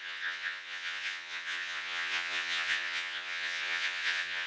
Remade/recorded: remade